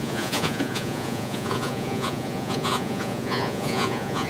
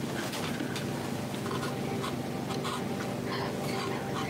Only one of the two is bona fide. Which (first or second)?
second